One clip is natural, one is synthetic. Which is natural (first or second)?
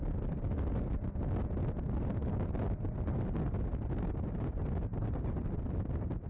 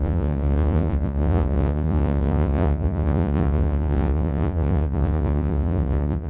first